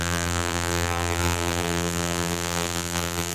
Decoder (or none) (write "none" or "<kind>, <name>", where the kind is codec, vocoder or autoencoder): vocoder, BigVGAN v2